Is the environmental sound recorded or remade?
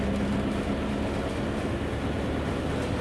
recorded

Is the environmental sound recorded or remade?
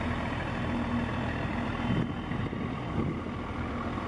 recorded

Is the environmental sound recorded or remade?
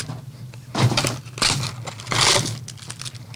recorded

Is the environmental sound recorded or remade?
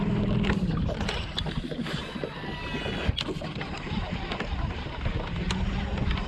recorded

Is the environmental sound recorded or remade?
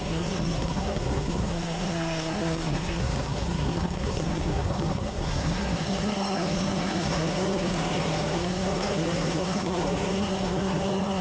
remade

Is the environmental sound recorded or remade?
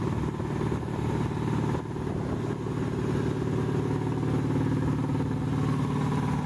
recorded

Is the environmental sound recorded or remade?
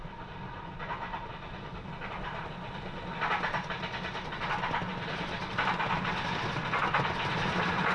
recorded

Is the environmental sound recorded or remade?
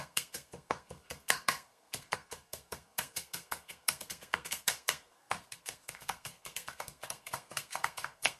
remade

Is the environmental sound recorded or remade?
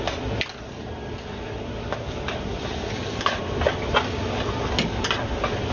recorded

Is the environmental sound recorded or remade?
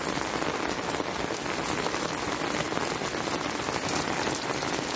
recorded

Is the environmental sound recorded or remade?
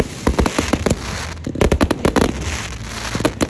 recorded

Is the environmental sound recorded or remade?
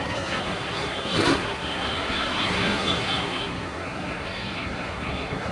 remade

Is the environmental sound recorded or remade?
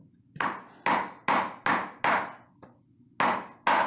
recorded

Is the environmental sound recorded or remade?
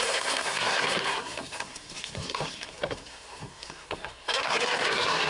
remade